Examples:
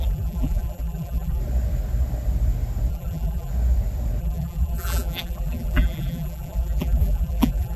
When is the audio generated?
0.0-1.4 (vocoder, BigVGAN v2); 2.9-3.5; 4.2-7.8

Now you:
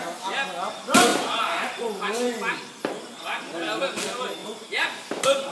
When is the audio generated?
1.1-2.9 (vocoder, BigVGAN v2); 4.4-5.1

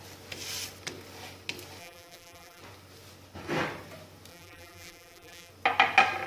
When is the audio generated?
1.8-2.6 (vocoder, BigVGAN v2); 4.3-5.5

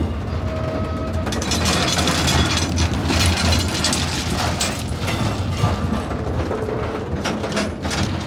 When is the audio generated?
1.0-2.6 (vocoder, BigVGAN v2); 3.0-3.6

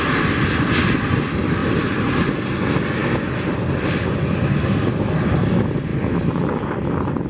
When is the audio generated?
1.6-2.3 (vocoder, BigVGAN v2)

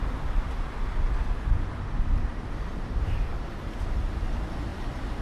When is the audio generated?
2.3-4.3 (vocoder, BigVGAN v2); 4.7-5.2

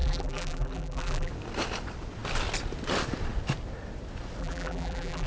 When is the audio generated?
0.0-1.3 (vocoder, BigVGAN v2); 4.4-5.3